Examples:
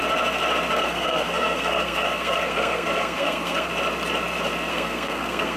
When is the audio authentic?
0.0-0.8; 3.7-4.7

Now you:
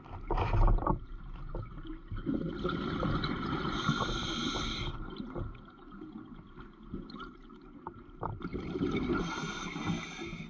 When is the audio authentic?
0.0-8.5; 9.8-10.5

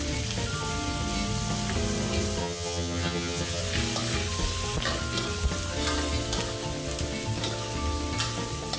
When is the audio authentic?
0.0-2.4; 3.6-8.8

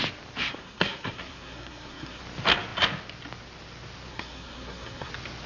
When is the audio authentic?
0.0-0.4; 2.2-4.1; 5.1-5.5

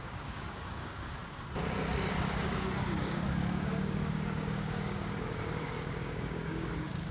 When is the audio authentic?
1.2-2.1

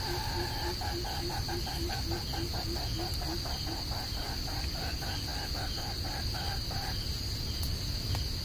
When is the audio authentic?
0.0-8.4

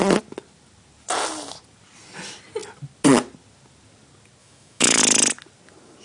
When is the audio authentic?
0.0-4.4; 5.0-6.0

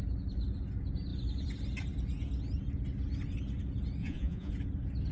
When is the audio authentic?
0.0-4.0; 4.5-5.1